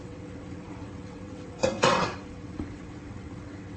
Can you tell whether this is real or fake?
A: fake